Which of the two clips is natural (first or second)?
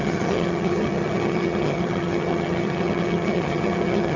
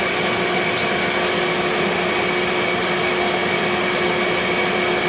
second